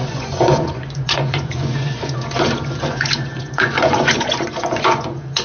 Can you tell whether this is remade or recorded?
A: remade